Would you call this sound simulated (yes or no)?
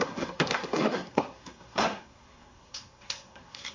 yes